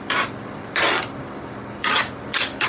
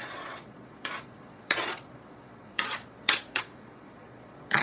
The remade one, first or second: second